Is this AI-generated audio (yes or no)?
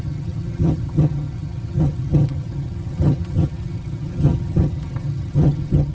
yes